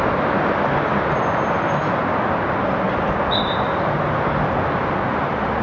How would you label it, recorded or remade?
recorded